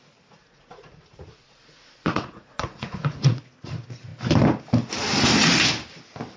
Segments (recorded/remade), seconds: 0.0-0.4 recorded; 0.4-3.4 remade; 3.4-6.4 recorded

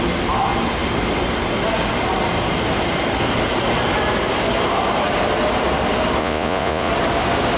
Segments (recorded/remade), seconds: 0.0-6.2 recorded; 6.2-6.9 remade; 6.9-7.6 recorded

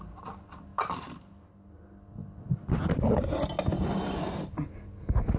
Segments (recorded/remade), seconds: 0.0-5.4 recorded

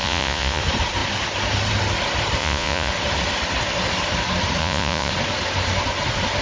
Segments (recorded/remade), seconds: 0.0-0.6 remade; 0.6-2.4 recorded; 2.4-2.9 remade; 2.9-4.6 recorded; 4.6-5.1 remade; 5.1-6.4 recorded

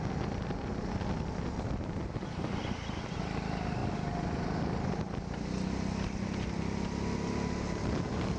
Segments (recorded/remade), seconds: 0.0-8.4 recorded

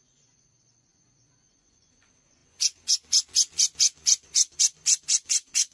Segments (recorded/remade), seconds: 0.0-5.7 remade

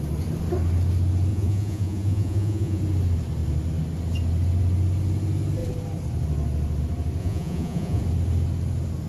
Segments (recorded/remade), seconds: 0.0-1.3 recorded; 1.3-2.8 remade; 2.8-7.2 recorded; 7.2-8.0 remade; 8.0-9.1 recorded

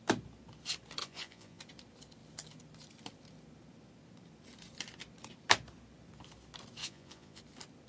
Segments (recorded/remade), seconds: 0.0-1.0 recorded; 1.0-1.6 remade; 1.6-6.8 recorded; 6.8-7.4 remade; 7.4-7.9 recorded